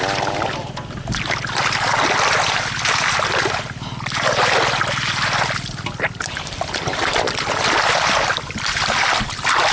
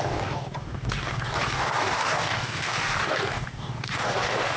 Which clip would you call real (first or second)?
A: first